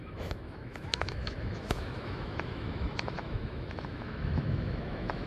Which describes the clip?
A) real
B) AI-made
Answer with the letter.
B